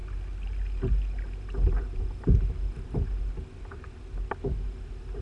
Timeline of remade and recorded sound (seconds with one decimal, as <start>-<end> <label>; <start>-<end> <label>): 0.0-5.2 recorded